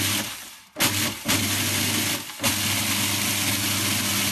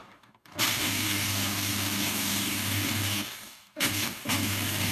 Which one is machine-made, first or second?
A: second